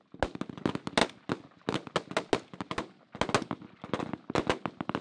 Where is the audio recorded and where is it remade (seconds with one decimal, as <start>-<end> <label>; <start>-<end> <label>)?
0.0-5.0 recorded